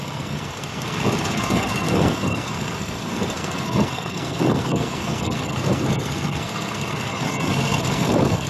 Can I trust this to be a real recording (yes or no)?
no